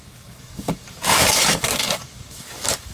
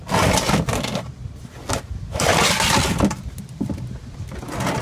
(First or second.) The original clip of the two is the second